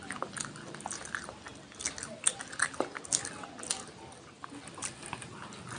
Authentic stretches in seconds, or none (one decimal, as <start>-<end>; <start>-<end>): 0.0-5.8